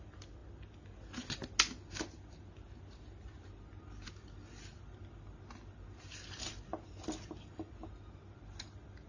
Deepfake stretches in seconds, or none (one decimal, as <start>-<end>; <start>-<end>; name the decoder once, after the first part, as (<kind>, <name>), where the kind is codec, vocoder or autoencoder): none